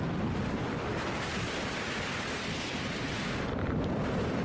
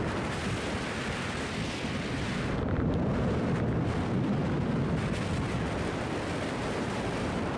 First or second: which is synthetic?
first